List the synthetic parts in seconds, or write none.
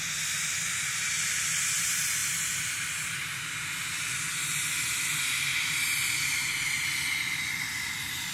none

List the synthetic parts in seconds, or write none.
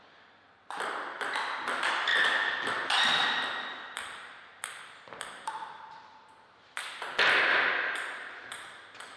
none